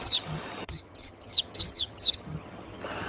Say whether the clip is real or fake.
fake